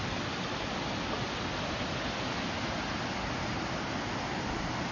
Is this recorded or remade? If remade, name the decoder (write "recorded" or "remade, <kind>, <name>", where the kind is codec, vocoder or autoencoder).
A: recorded